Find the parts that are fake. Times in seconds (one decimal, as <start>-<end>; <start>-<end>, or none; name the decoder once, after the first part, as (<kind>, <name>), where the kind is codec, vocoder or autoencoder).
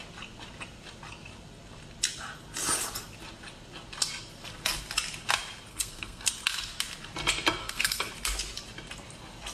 5.7-6.3 (codec, SNAC); 7.6-8.1